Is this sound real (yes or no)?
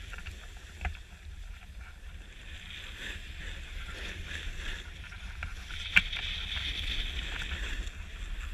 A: yes